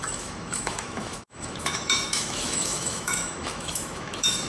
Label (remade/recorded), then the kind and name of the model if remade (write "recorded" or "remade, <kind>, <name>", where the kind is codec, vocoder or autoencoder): remade, autoencoder, DAC-VAE